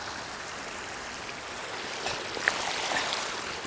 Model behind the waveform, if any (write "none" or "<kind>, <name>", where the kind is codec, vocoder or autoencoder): vocoder, BigVGAN v2